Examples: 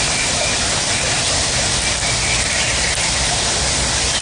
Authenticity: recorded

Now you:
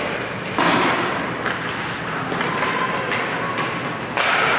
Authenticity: recorded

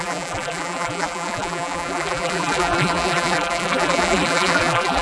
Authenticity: remade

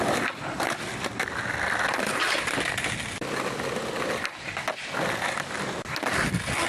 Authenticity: recorded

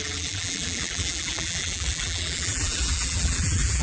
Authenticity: remade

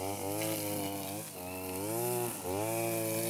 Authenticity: recorded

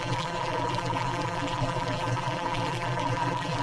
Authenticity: remade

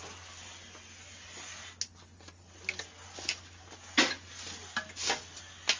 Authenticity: recorded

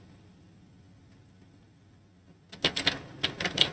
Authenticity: recorded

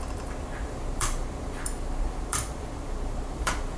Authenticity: remade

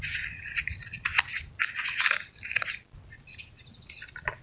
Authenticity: recorded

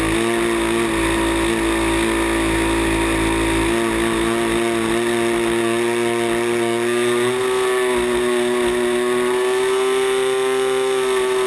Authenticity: recorded